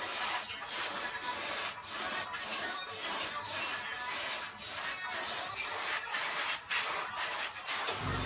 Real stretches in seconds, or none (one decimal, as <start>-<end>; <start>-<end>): 0.0-8.3